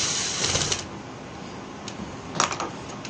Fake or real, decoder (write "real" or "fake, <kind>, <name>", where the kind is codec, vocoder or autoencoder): real